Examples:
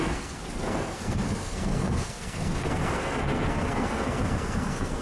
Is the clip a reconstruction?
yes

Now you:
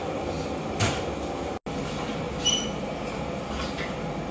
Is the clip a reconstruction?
no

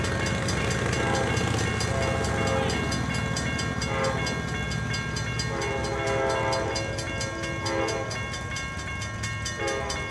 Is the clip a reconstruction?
no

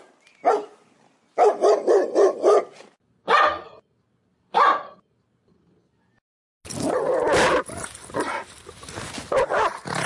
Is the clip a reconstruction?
no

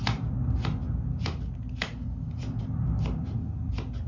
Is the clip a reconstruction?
no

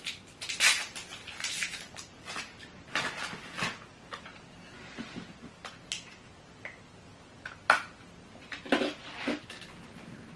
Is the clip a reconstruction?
no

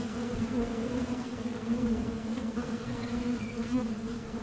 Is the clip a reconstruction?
yes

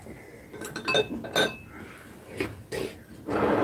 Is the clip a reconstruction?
no